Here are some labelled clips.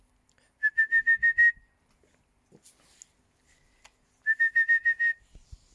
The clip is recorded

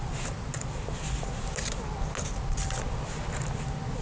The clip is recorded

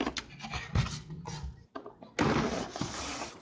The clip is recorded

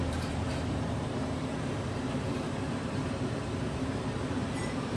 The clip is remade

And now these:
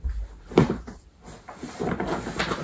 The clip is remade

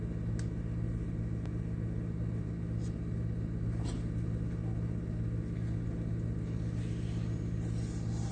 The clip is recorded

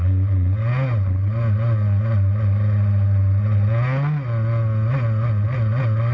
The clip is recorded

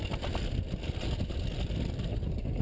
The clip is recorded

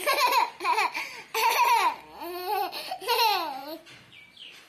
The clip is recorded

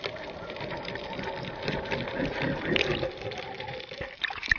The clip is recorded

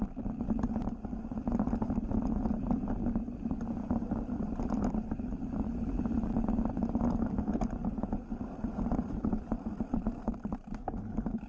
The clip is remade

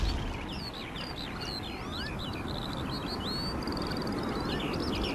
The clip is recorded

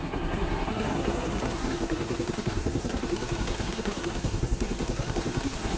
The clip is remade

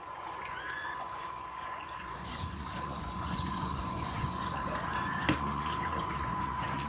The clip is remade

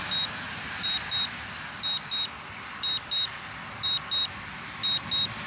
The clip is recorded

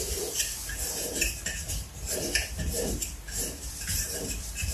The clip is remade